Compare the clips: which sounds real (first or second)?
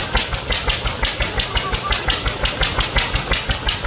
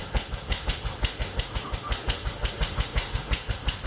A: first